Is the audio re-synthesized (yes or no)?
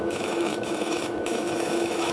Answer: yes